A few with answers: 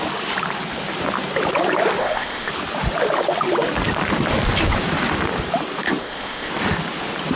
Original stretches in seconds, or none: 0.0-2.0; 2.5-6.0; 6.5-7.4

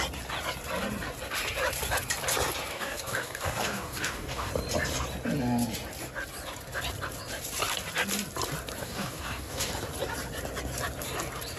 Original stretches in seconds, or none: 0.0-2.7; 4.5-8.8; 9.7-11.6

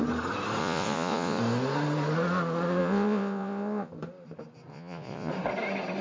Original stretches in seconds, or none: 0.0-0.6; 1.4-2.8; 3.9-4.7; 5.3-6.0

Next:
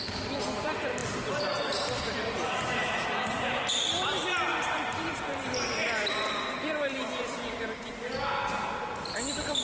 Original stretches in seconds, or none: 0.0-4.5; 5.4-9.6

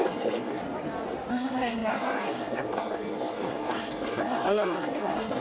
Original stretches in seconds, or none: 0.6-1.3